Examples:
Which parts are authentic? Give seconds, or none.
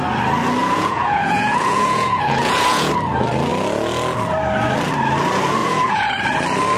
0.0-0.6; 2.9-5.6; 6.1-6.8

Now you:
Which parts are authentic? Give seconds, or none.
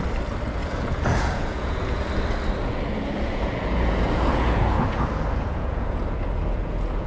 0.0-0.6; 2.1-2.6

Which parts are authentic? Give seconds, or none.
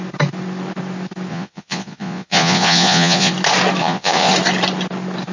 0.0-1.3; 3.3-3.8; 4.3-5.3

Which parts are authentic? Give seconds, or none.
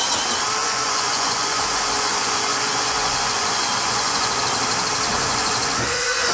0.0-0.6; 4.4-5.1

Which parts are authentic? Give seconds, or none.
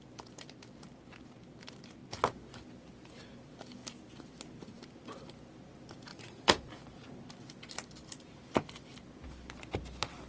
0.0-6.1; 6.7-10.3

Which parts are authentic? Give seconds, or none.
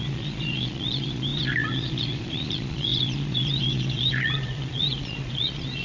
none